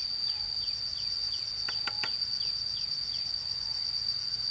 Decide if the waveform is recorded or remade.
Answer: recorded